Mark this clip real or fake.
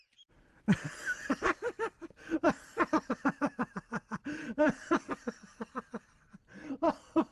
fake